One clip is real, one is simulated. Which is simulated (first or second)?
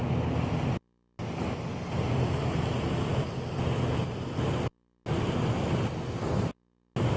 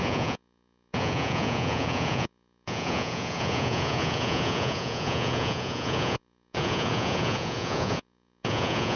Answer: second